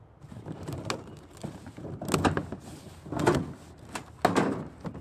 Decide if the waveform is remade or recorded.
recorded